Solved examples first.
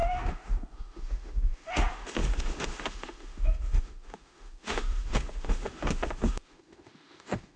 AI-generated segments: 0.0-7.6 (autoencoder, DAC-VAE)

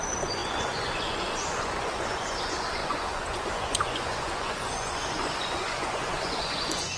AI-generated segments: 0.0-7.0 (vocoder, Vocos)

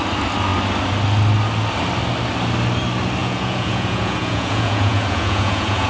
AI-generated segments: 3.2-5.9 (vocoder, Vocos)

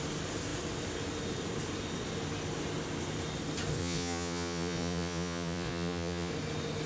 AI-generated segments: 3.8-6.3 (vocoder, Vocos)

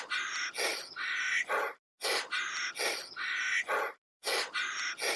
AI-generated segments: none